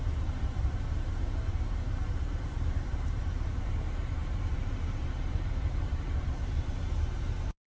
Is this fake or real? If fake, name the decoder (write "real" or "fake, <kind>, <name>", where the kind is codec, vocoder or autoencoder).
fake, vocoder, BigVGAN v2